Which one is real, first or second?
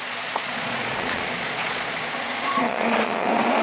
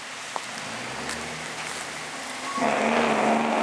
second